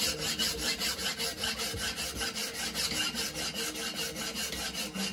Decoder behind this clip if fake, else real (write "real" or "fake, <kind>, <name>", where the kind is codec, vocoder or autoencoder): real